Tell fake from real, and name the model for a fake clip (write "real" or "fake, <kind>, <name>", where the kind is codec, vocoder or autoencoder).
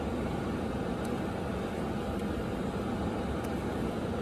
real